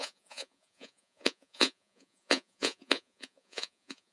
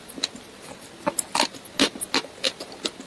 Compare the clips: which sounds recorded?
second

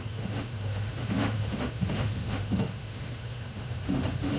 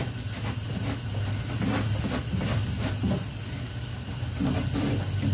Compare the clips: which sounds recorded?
second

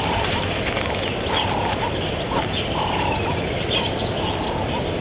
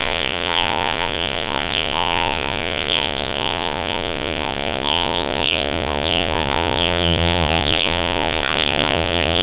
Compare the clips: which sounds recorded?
first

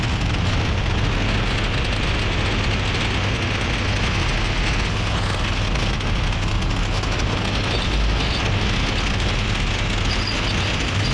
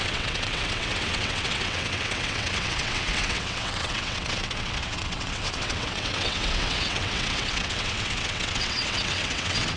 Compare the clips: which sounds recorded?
first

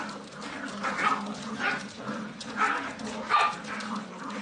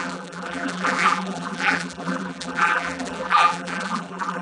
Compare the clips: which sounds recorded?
first